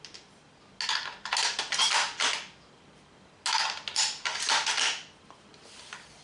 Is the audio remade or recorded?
recorded